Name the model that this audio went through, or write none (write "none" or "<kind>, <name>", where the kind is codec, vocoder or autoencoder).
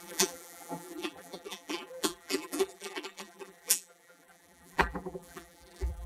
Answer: vocoder, BigVGAN v2